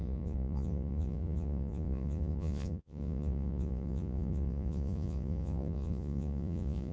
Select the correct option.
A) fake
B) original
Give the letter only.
A